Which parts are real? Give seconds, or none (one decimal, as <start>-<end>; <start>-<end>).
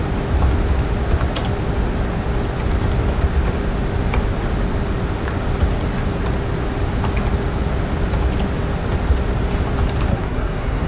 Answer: 0.0-10.1